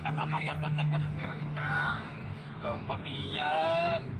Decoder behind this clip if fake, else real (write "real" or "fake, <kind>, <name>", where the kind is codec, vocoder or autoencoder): fake, codec, DAC